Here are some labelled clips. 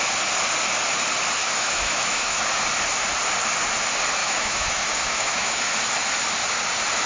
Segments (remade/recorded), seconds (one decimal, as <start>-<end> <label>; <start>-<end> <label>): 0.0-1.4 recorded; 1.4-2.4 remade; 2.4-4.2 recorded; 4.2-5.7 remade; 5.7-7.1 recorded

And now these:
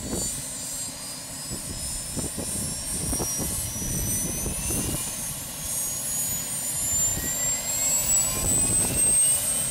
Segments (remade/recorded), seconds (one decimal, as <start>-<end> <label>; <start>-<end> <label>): 0.0-9.7 recorded

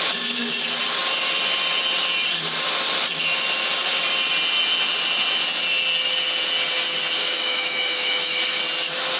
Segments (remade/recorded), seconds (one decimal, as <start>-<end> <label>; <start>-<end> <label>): 0.0-7.2 recorded; 7.2-8.6 remade; 8.6-9.2 recorded